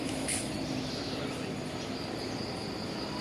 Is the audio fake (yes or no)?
no